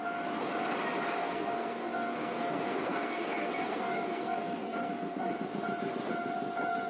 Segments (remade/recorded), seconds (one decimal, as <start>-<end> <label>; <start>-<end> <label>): 0.0-1.2 recorded; 1.2-5.3 remade; 5.3-6.9 recorded